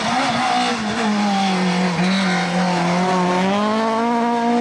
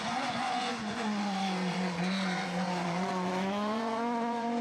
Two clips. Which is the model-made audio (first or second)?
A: second